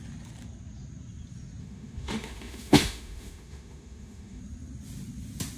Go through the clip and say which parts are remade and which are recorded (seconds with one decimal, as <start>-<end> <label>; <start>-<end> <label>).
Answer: 0.0-1.6 recorded; 1.6-4.4 remade; 4.4-5.6 recorded